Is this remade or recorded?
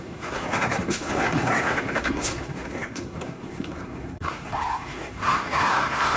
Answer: remade